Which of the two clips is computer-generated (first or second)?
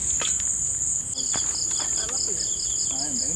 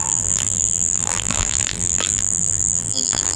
second